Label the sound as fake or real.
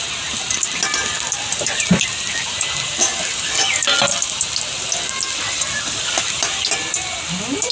real